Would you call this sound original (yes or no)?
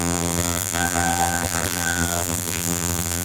no